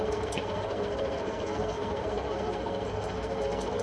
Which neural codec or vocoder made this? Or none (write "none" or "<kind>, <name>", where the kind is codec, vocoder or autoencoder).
codec, SNAC